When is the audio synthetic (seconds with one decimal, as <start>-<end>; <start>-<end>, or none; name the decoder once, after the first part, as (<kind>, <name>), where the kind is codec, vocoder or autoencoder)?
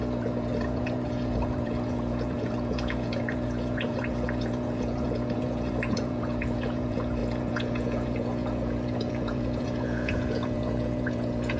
0.0-11.6 (vocoder, Vocos)